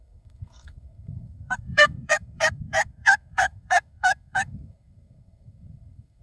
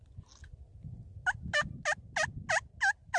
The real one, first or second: second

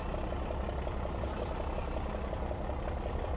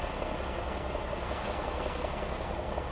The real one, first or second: first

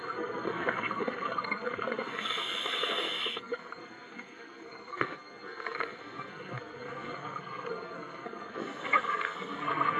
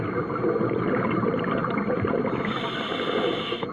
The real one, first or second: second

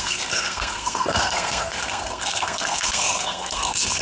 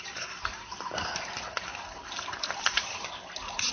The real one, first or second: second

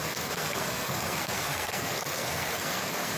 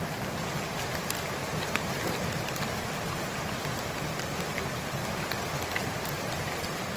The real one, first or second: second